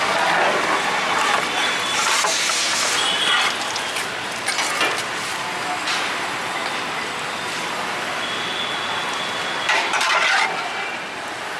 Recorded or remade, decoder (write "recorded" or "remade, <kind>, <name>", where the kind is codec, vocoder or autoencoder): recorded